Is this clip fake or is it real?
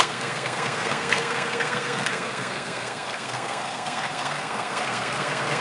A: fake